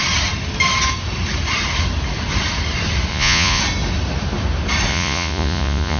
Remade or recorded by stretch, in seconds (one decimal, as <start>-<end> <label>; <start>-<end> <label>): 0.0-3.1 recorded; 3.1-3.6 remade; 3.6-4.9 recorded; 4.9-6.0 remade